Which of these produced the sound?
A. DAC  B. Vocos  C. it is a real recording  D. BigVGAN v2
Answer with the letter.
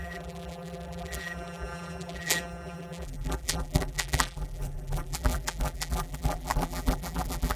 D